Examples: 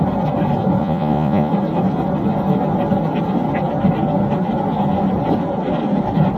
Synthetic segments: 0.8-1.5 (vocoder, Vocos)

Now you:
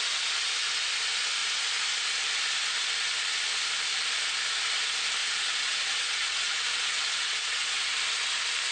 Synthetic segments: 5.2-7.8 (vocoder, Vocos)

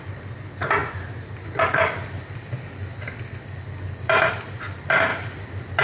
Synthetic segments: none

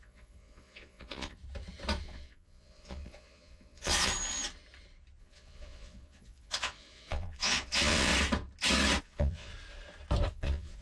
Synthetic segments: 0.0-1.4 (vocoder, Vocos); 2.0-4.1; 5.2-8.1; 9.0-9.5; 10.3-10.8

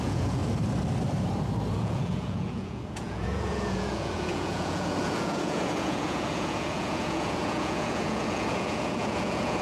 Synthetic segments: 0.0-0.4 (vocoder, Vocos); 1.7-9.6

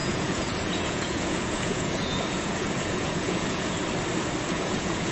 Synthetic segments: 0.0-3.8 (vocoder, Vocos); 4.4-5.1

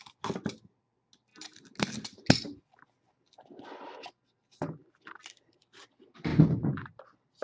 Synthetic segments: 6.3-6.9 (vocoder, Vocos)

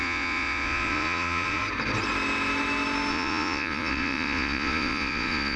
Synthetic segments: 0.0-1.6 (vocoder, Vocos); 3.1-5.6